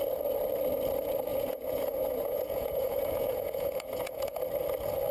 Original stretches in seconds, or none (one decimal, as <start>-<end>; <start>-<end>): 0.0-1.3; 4.4-5.1

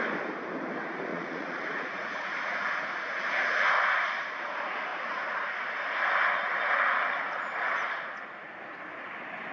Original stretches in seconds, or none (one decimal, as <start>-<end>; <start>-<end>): 0.0-1.1; 3.2-9.5

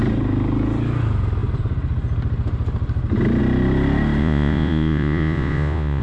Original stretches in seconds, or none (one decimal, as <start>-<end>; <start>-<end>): 0.0-4.2

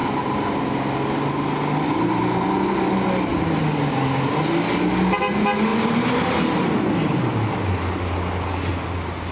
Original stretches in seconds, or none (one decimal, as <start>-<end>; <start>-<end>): 0.0-9.3